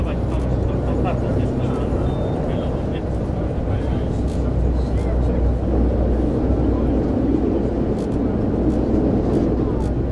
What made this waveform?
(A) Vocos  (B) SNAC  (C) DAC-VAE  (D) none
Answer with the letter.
D